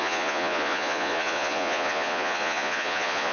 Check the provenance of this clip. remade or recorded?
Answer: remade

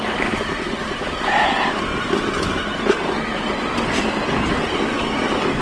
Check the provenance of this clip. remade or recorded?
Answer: recorded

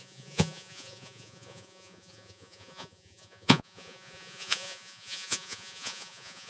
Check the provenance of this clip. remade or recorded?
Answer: remade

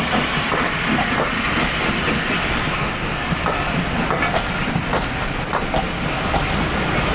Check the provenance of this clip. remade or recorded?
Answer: recorded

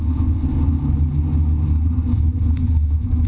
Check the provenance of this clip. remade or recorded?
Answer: recorded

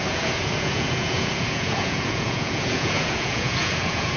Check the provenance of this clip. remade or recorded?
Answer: remade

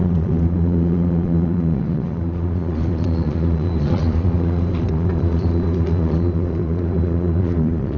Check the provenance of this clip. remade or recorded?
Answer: remade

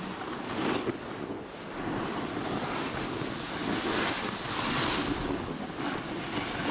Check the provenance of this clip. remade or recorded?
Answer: recorded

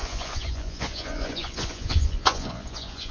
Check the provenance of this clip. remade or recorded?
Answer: remade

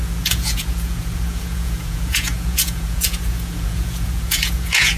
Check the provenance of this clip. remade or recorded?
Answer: remade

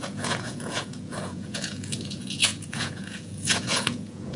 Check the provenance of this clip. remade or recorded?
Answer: remade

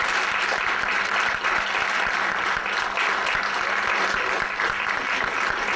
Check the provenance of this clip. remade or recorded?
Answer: recorded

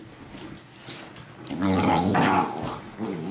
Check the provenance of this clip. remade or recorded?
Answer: recorded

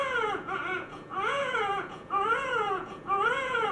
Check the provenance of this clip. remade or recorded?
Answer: remade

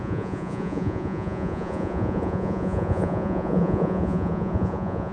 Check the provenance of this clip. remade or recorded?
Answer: remade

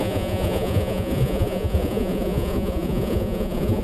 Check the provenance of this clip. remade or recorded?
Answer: remade